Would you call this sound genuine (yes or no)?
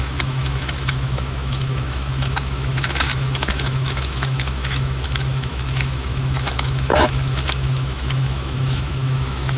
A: no